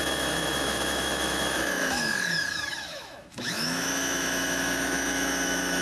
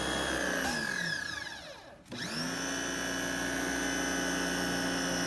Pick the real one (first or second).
second